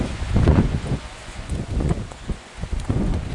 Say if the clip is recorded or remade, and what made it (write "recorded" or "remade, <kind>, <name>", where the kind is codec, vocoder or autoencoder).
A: remade, vocoder, Vocos